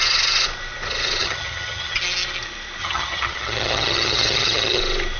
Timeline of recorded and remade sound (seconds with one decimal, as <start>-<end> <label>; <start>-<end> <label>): 0.0-1.2 recorded; 1.2-2.0 remade; 2.0-2.8 recorded; 2.8-4.8 remade; 4.8-5.2 recorded